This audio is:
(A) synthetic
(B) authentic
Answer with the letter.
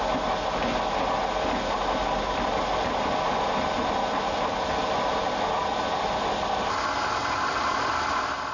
B